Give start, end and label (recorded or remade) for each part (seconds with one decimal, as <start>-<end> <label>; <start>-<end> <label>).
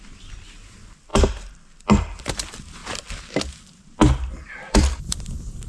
0.0-5.7 recorded